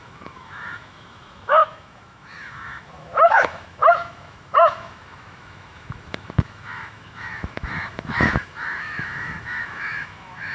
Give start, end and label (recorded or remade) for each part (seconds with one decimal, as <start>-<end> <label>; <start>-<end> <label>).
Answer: 0.0-10.5 remade